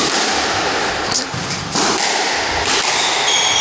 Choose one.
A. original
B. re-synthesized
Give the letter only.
A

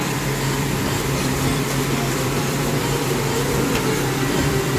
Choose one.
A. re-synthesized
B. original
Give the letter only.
A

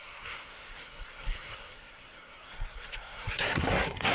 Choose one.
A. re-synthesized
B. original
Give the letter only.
A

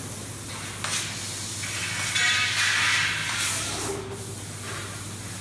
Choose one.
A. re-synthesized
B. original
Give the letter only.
B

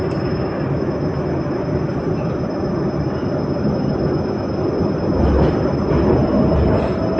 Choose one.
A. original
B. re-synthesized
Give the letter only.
A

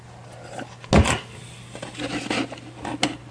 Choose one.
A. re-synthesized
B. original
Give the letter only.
B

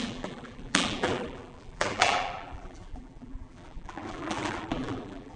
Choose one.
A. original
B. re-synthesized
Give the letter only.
B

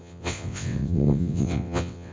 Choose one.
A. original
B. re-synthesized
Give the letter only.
B